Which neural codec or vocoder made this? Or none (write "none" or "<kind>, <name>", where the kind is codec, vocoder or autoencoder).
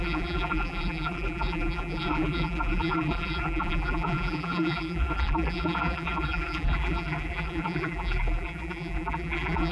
vocoder, BigVGAN v2